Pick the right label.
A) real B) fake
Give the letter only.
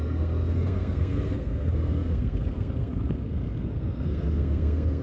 B